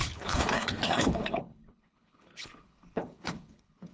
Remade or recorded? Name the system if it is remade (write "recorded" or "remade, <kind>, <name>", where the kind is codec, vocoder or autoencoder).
remade, codec, HILCodec